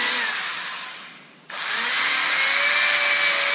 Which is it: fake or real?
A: real